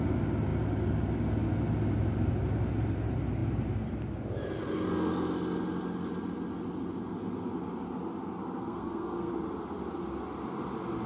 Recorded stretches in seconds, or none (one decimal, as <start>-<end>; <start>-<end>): 0.0-8.6; 9.3-11.1